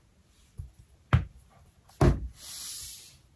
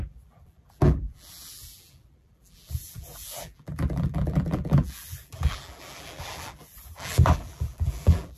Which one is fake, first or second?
second